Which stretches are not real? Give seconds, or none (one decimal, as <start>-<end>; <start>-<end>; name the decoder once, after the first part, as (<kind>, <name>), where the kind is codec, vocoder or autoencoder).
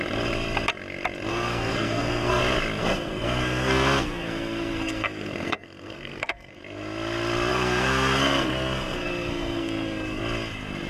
1.3-2.4 (codec, SNAC); 2.8-6.6; 7.5-10.2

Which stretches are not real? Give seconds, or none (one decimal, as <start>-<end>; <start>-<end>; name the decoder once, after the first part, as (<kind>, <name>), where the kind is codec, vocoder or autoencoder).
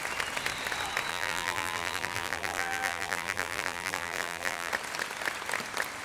1.1-4.7 (vocoder, BigVGAN v2)